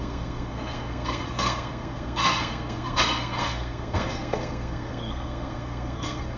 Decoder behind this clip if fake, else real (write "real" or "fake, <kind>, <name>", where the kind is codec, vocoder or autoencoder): fake, codec, SNAC